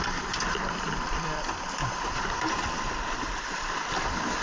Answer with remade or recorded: remade